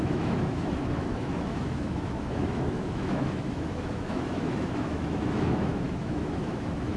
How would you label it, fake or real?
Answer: fake